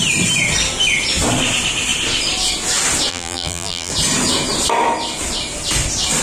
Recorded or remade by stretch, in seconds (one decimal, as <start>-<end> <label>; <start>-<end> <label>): 0.0-3.1 recorded; 3.1-3.9 remade; 3.9-6.2 recorded